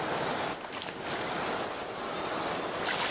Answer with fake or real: real